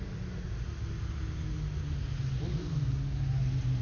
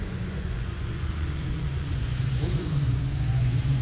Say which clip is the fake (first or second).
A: second